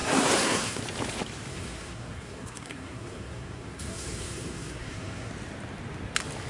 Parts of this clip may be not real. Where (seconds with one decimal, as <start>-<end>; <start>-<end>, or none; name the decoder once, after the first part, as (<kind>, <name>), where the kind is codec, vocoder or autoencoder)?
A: 0.0-0.8 (codec, SNAC); 1.5-5.3

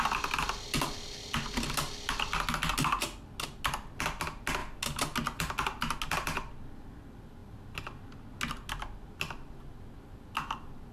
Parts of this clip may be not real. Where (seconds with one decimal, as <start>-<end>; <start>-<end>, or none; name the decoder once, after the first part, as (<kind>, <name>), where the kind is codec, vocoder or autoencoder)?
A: none

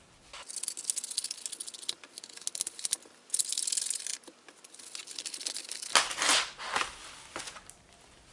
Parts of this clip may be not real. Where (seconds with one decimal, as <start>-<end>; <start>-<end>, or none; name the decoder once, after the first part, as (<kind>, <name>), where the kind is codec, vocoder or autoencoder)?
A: none

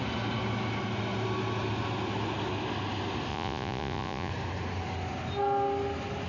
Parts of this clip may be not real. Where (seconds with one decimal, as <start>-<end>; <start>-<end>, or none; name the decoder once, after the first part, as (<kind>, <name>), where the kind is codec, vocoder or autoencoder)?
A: 3.3-4.3 (vocoder, Vocos)

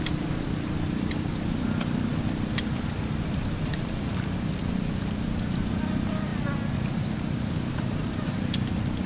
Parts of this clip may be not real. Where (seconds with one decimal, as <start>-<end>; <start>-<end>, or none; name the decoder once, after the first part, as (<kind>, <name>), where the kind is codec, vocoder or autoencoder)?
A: 0.0-6.3 (vocoder, BigVGAN v2); 7.7-9.1

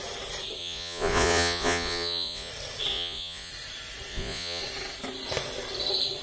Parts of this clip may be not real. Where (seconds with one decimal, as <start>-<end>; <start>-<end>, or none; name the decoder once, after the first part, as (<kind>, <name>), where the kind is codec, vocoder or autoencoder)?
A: 0.6-2.5 (vocoder, Vocos); 2.9-3.5; 4.1-4.6

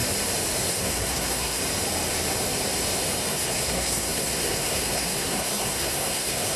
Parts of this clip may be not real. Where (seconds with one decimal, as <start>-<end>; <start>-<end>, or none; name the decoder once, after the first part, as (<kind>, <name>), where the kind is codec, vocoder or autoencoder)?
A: 0.7-1.6 (codec, SNAC); 3.3-6.6

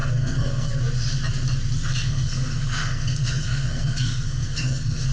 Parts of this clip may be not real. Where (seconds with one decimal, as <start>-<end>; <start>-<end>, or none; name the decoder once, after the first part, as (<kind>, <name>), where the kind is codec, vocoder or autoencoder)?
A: 0.0-0.7 (codec, SNAC); 1.9-5.1